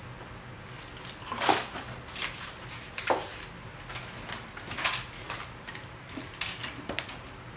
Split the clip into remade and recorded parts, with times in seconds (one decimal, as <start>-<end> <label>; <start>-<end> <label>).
0.0-7.6 recorded